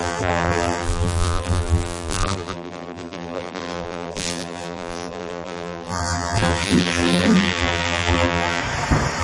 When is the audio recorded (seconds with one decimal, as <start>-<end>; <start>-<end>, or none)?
8.6-9.2